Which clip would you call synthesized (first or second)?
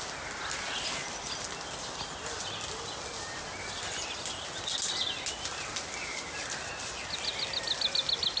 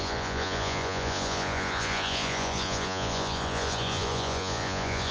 second